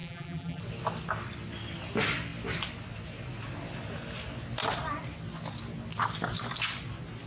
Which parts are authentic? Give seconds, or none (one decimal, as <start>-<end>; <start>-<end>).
0.6-7.3